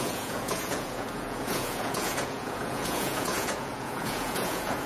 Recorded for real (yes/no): no